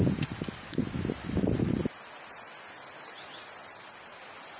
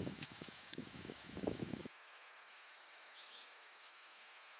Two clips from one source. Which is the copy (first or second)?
second